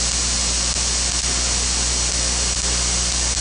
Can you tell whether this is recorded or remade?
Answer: recorded